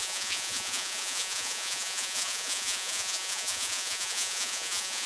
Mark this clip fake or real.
fake